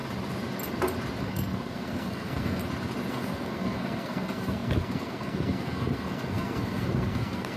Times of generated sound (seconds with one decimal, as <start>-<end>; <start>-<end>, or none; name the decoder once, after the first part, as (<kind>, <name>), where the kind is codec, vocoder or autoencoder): 1.2-2.6 (codec, SNAC); 3.1-7.6